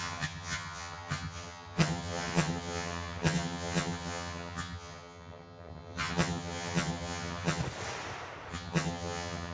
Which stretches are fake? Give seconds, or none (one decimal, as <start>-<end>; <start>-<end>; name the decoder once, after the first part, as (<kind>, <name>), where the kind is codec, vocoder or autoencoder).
0.0-7.6 (vocoder, HiFi-GAN); 8.5-9.5